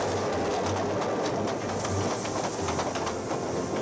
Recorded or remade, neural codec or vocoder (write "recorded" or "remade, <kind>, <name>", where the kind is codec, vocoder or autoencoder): recorded